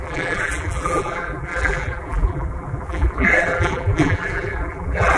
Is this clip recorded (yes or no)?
no